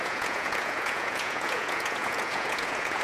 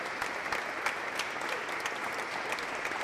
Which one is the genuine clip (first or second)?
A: second